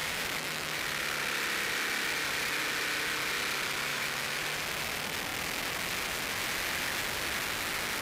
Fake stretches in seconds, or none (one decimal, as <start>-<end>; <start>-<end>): 0.0-0.8; 3.9-4.4